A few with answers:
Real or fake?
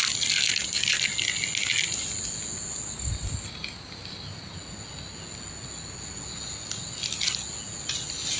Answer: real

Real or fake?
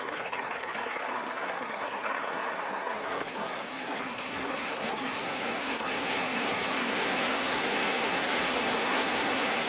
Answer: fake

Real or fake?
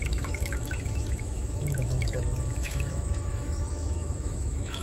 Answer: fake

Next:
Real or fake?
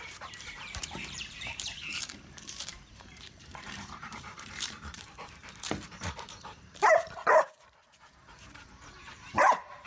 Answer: fake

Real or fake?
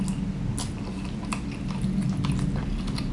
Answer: real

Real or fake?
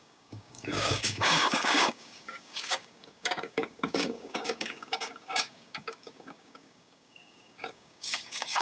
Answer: fake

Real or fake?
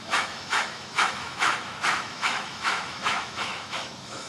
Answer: fake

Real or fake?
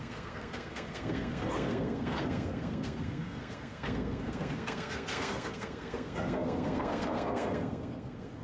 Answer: fake